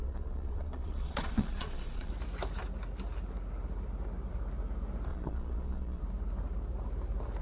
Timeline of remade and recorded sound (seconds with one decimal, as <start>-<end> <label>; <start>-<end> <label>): 0.0-2.1 remade; 2.1-5.1 recorded; 5.1-6.0 remade; 6.0-7.4 recorded